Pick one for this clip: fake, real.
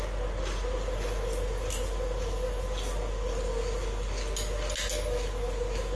real